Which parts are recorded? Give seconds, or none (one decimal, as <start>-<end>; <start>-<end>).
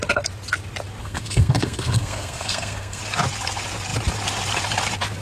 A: 0.0-1.0; 3.0-5.2